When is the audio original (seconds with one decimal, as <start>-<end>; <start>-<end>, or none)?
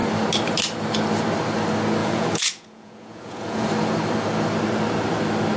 0.0-2.0; 3.7-5.6